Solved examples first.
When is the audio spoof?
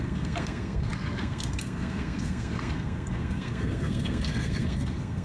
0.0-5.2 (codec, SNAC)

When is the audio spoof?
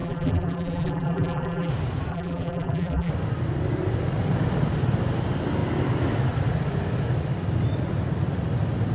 0.0-1.7 (vocoder, BigVGAN v2); 2.1-3.1